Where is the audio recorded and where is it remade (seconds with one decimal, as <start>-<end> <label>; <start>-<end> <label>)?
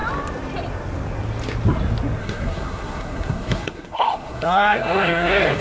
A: 0.0-2.2 recorded; 2.2-5.6 remade